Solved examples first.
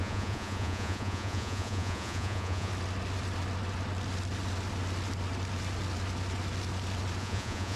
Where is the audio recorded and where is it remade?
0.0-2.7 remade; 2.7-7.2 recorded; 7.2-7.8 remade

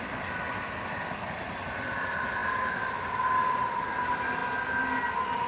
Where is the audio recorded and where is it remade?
0.0-5.5 recorded